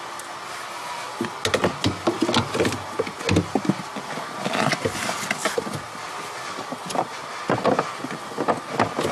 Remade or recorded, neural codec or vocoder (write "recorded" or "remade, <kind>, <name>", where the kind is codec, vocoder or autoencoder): recorded